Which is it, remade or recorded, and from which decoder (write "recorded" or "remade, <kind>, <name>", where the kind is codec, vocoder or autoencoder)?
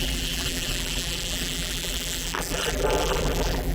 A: remade, vocoder, BigVGAN v2